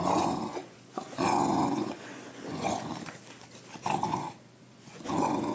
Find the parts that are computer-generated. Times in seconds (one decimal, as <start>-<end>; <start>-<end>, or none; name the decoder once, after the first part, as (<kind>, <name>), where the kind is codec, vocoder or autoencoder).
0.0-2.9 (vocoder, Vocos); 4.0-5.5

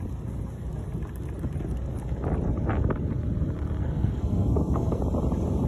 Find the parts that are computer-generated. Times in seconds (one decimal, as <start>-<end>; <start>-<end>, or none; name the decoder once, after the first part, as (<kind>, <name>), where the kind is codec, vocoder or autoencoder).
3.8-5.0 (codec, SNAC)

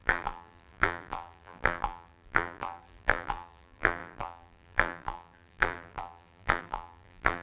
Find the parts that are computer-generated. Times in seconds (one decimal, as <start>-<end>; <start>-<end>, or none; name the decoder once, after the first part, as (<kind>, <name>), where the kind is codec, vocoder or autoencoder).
0.0-7.4 (vocoder, BigVGAN v2)

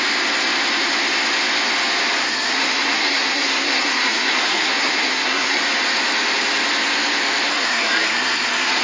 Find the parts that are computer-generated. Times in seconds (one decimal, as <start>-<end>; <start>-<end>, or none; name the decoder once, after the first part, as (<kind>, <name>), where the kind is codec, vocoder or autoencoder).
2.2-5.6 (codec, SNAC); 7.5-8.8